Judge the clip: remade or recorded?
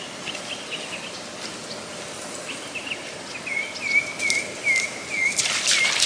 recorded